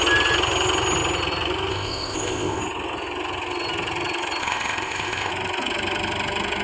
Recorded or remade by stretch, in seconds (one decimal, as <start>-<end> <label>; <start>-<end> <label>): 0.0-1.7 recorded; 1.7-2.6 remade; 2.6-4.4 recorded; 4.4-5.3 remade; 5.3-6.6 recorded